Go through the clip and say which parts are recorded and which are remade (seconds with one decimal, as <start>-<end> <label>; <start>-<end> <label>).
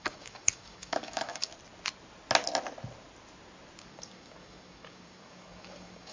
0.0-1.5 remade; 1.5-3.8 recorded; 3.8-6.1 remade